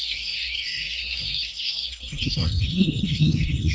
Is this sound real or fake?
fake